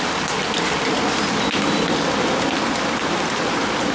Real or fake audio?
real